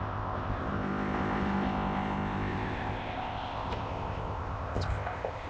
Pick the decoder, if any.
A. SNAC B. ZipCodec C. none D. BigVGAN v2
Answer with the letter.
B